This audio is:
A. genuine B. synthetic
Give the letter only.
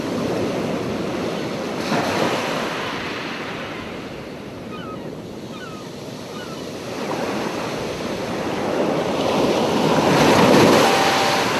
A